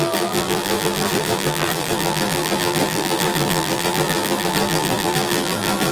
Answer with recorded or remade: remade